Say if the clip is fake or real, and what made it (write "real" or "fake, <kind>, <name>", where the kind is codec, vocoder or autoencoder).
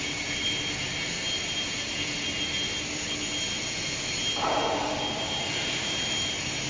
real